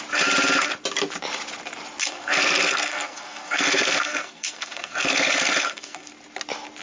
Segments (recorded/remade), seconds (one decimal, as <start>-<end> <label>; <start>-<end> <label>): 0.0-2.0 recorded; 2.0-6.1 remade; 6.1-6.8 recorded